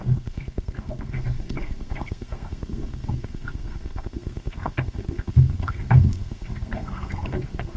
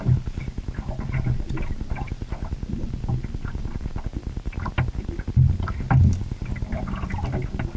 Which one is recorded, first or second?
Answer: second